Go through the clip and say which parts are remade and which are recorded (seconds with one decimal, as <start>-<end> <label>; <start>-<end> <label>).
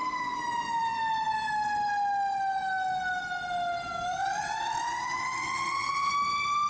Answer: 0.0-4.2 recorded; 4.2-6.1 remade; 6.1-6.7 recorded